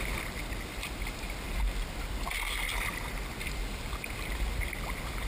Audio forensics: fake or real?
real